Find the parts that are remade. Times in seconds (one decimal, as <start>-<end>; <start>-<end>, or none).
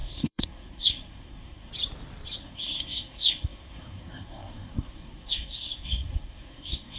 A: 0.0-1.7; 2.4-7.0